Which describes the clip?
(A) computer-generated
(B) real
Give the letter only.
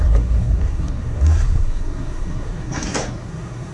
A